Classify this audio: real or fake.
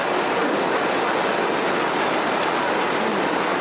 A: real